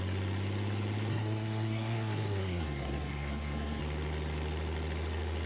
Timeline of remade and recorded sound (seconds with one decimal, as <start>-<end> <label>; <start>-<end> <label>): 0.0-1.1 recorded; 1.1-3.8 remade; 3.8-5.5 recorded